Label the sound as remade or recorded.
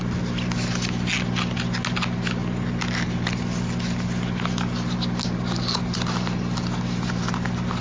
recorded